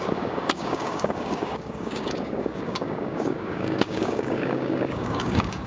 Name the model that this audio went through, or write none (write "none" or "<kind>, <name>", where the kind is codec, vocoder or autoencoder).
codec, DAC